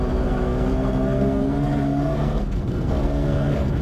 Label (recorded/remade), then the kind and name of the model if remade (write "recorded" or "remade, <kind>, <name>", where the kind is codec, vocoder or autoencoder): remade, codec, SNAC